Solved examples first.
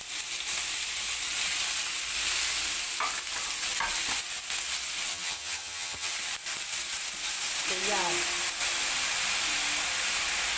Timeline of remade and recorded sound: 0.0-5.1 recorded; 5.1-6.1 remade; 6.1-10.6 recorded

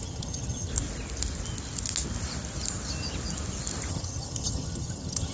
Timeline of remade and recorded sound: 0.0-0.7 remade; 0.7-3.9 recorded; 3.9-5.3 remade

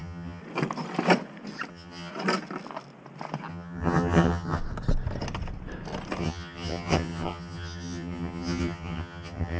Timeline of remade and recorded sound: 0.0-0.4 remade; 0.4-1.7 recorded; 1.7-2.1 remade; 2.1-3.5 recorded; 3.5-4.6 remade; 4.6-6.2 recorded; 6.2-9.6 remade

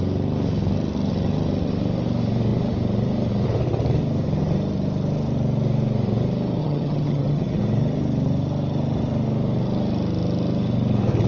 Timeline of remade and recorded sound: 0.0-6.6 recorded; 6.6-7.6 remade; 7.6-11.3 recorded

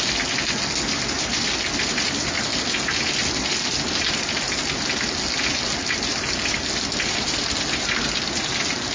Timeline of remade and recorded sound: 0.0-8.9 recorded